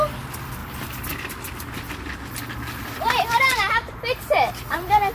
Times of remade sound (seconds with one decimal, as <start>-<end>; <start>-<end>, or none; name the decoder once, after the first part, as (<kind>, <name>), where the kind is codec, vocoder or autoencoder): none